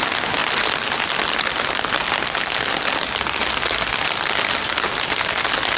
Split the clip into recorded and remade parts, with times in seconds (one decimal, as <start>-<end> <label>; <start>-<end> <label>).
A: 0.0-5.8 recorded